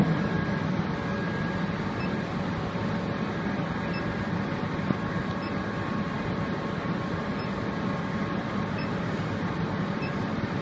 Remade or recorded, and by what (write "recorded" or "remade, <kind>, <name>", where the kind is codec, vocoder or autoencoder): remade, vocoder, BigVGAN v2